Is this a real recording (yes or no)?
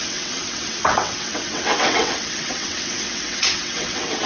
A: no